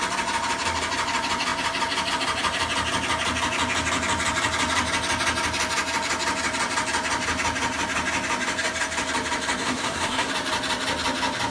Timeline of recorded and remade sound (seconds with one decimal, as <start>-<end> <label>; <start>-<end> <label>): 0.0-9.6 recorded; 9.6-10.3 remade; 10.3-11.5 recorded